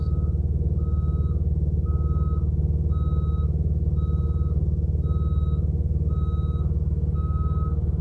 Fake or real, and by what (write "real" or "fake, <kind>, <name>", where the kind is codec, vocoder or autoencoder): real